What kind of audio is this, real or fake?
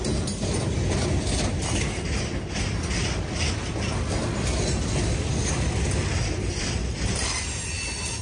real